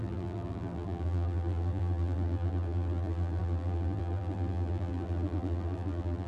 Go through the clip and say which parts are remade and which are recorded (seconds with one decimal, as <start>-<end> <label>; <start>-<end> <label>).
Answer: 0.0-6.3 remade